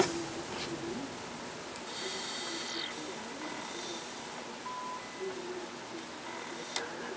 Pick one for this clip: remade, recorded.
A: recorded